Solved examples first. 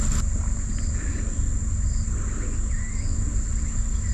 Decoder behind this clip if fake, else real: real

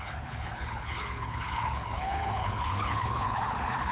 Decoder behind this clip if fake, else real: fake, codec, HILCodec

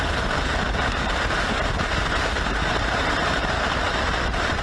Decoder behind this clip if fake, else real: fake, vocoder, BigVGAN v2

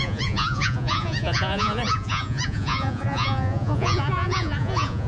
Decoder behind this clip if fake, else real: fake, vocoder, Vocos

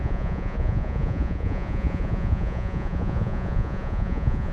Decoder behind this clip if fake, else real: fake, vocoder, Vocos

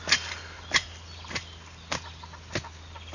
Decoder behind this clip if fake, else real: real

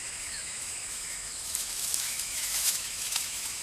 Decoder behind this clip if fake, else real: fake, autoencoder, DAC-VAE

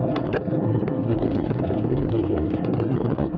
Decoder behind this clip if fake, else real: fake, codec, SNAC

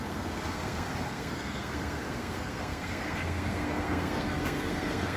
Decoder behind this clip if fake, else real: fake, codec, SNAC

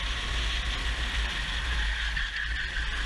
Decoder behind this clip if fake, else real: real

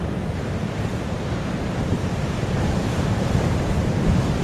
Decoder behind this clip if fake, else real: fake, vocoder, BigVGAN v2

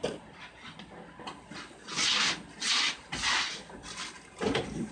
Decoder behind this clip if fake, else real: real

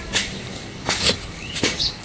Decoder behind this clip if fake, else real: fake, codec, DAC